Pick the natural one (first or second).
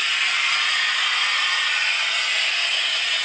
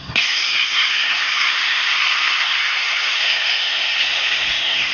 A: first